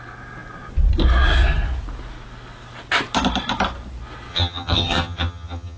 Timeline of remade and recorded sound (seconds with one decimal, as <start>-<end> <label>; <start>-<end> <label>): 0.0-4.3 recorded; 4.3-5.8 remade